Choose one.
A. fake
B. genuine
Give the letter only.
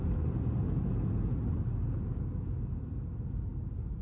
B